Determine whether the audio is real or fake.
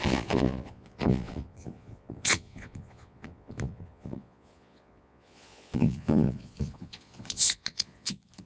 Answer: fake